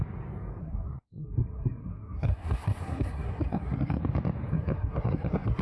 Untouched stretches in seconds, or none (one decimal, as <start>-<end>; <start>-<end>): 0.0-0.6; 4.0-4.5

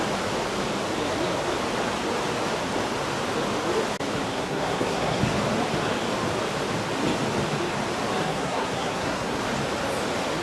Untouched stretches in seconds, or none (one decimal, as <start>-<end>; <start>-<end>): 0.0-4.3; 5.2-8.3; 9.4-10.4

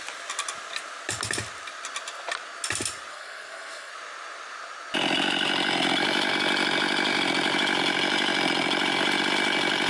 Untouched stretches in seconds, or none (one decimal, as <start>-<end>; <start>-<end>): 0.0-3.1; 3.9-9.9

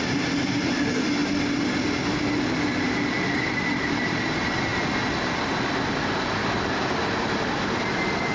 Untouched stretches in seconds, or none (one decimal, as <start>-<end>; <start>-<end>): 0.0-8.3